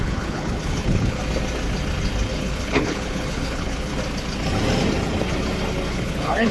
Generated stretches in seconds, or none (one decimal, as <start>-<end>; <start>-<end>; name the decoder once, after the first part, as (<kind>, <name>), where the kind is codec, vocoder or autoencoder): 0.0-1.2 (codec, HILCodec); 2.3-3.9; 5.9-6.5